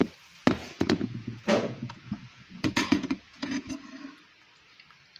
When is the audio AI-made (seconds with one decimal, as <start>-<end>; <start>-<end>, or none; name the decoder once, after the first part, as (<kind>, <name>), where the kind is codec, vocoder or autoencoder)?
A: 0.6-3.7 (vocoder, Vocos)

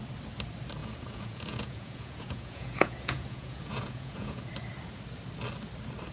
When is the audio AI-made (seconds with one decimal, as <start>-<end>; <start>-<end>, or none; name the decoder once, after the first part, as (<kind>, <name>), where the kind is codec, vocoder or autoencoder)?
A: 0.8-4.5 (vocoder, Vocos)